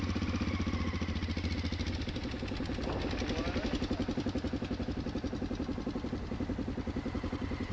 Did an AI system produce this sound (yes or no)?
no